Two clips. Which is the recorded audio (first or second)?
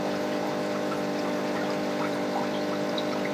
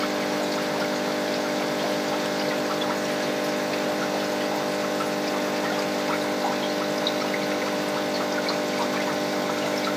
second